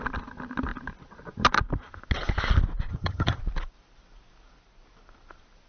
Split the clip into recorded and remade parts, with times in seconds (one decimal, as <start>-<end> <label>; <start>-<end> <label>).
0.0-2.9 recorded; 2.9-3.4 remade; 3.4-5.7 recorded